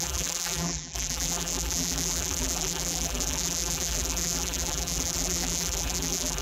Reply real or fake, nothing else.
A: fake